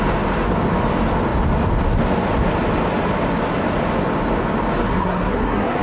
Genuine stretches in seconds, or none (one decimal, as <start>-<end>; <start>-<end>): 0.0-4.8

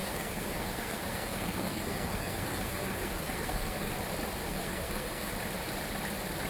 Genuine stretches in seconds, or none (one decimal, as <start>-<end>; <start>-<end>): 3.9-4.4; 5.3-6.5

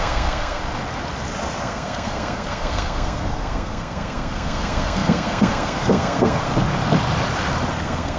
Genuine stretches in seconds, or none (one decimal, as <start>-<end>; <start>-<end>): 0.6-1.6; 6.5-7.7

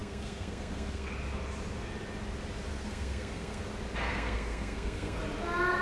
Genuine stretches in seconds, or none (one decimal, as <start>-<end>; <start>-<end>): 1.1-2.7; 3.6-4.1; 5.2-5.8

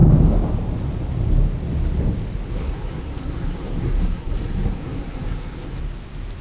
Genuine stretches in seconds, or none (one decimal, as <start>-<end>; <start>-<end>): 0.0-2.5; 5.8-6.4

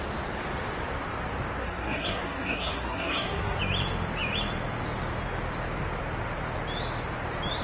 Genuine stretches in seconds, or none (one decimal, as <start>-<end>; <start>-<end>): 0.0-1.6; 3.6-7.6

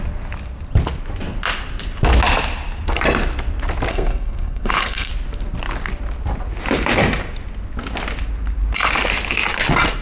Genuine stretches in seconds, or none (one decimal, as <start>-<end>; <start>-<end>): 0.0-3.9; 5.1-10.0

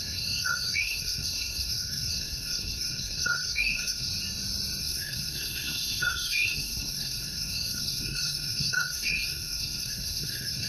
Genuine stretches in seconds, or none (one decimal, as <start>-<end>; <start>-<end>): 4.1-4.8